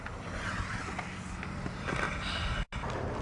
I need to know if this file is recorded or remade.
recorded